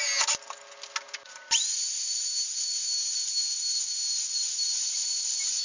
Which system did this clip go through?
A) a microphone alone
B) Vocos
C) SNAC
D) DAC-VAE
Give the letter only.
A